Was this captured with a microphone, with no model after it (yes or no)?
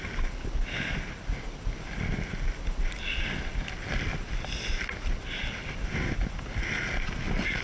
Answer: yes